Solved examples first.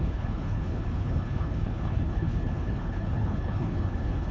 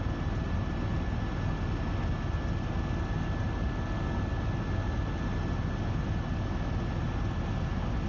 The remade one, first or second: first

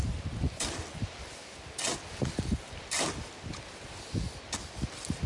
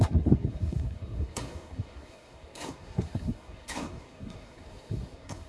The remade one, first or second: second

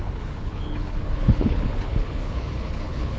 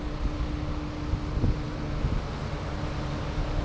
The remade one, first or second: first